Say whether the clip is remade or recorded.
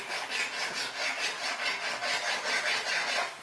recorded